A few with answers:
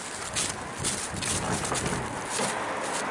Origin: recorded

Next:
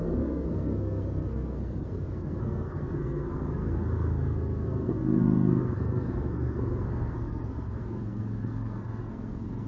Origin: remade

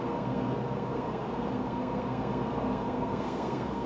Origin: remade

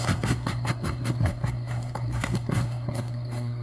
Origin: remade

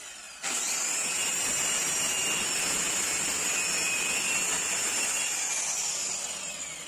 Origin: recorded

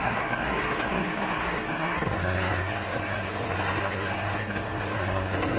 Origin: remade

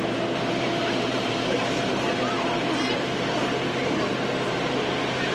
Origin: remade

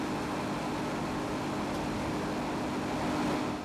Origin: recorded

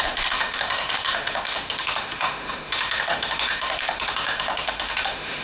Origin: remade